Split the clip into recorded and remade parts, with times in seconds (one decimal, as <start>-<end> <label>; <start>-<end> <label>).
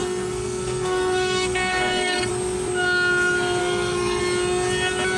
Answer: 0.0-2.3 remade; 2.3-3.6 recorded; 3.6-4.2 remade; 4.2-5.2 recorded